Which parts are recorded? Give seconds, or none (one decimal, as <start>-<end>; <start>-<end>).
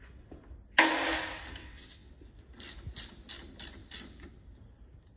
0.0-1.6; 2.1-5.2